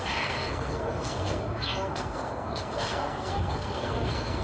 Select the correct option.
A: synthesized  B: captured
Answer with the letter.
A